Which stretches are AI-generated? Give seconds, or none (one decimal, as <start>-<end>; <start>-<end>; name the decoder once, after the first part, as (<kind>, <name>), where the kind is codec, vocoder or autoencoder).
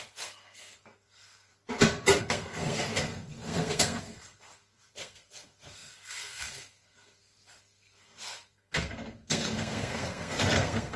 0.0-1.5 (codec, SNAC); 2.2-11.0